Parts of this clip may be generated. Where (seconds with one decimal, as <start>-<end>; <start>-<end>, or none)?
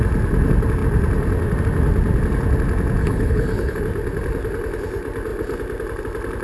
3.0-3.8